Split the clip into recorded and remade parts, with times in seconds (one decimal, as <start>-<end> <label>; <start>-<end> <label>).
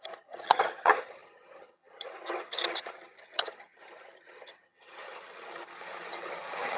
0.0-6.8 remade